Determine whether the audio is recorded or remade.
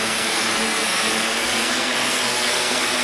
remade